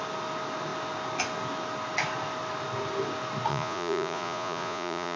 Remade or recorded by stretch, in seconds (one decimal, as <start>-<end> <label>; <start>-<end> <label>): 0.0-3.5 recorded; 3.5-5.2 remade